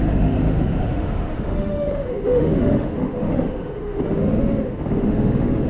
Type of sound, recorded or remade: remade